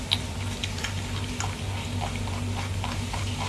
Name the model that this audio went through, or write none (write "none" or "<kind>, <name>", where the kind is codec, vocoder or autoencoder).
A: none